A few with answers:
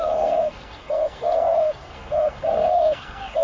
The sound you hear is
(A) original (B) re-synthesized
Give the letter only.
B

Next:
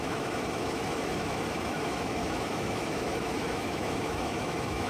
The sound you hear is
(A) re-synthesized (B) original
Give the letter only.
A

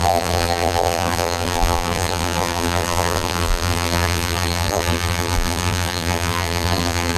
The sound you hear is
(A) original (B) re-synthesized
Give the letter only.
B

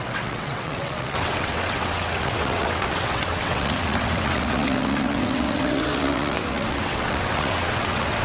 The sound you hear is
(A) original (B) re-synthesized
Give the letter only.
B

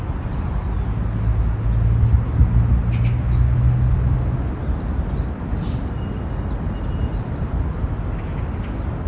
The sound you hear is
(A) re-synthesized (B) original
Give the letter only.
B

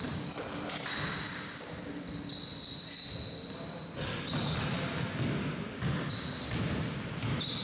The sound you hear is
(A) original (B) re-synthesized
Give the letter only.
A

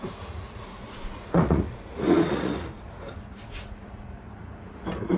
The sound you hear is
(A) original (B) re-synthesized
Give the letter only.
B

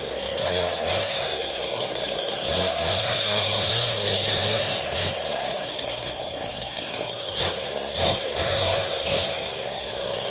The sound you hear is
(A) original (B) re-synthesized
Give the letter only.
B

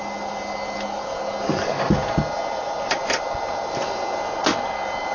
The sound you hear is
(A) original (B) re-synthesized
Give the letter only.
A